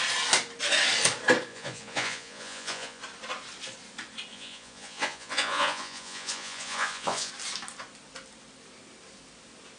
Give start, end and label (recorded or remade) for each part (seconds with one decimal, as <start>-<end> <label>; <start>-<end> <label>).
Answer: 0.0-1.5 recorded; 1.5-3.0 remade; 3.0-4.3 recorded; 4.3-7.3 remade; 7.3-9.8 recorded